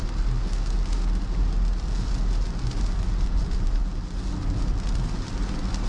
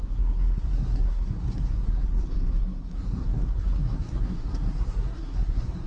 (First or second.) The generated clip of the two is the second